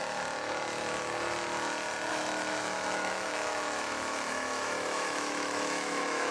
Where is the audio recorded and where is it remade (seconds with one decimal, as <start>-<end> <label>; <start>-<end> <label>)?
0.0-2.1 recorded; 2.1-6.3 remade